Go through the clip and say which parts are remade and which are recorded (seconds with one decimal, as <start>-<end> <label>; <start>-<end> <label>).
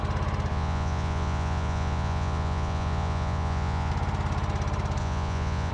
0.0-0.5 recorded; 0.5-3.9 remade; 3.9-5.0 recorded; 5.0-5.7 remade